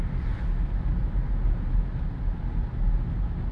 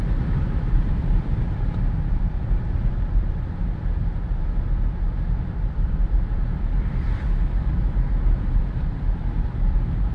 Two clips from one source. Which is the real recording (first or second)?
first